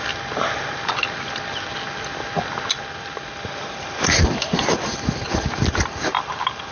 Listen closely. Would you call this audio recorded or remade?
recorded